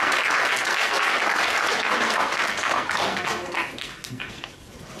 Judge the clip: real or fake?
fake